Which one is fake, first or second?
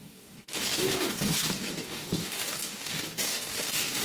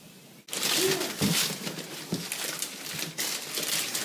first